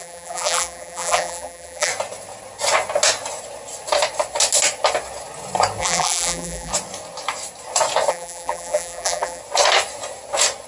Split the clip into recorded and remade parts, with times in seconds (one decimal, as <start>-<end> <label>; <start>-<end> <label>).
0.0-1.9 remade; 1.9-5.8 recorded; 5.8-6.7 remade; 6.7-8.1 recorded; 8.1-9.4 remade; 9.4-10.7 recorded